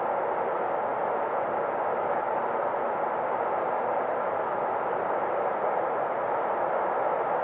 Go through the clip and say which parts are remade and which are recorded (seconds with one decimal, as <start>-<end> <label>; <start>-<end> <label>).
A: 0.0-7.4 recorded